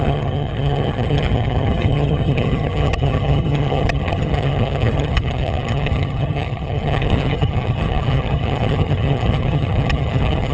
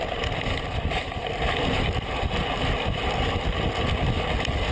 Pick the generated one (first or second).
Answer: first